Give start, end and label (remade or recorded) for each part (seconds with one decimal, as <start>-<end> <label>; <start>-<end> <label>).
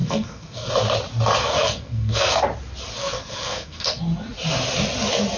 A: 0.0-0.7 remade; 0.7-1.4 recorded; 1.4-2.4 remade; 2.4-3.0 recorded; 3.0-4.0 remade; 4.0-5.4 recorded